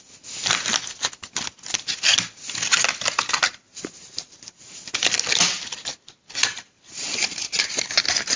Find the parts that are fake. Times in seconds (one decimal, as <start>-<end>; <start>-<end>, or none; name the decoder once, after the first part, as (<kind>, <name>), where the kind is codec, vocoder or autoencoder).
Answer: 3.4-5.1 (vocoder, BigVGAN v2); 6.4-7.7